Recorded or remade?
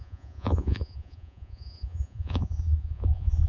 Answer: remade